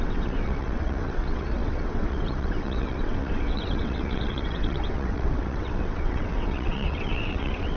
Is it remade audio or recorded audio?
remade